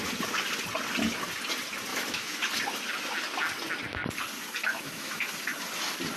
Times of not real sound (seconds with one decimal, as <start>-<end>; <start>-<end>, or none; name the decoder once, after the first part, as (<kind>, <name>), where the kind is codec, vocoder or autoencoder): 1.9-2.5 (autoencoder, DAC-VAE); 4.7-5.3